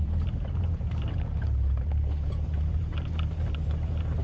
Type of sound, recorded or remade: remade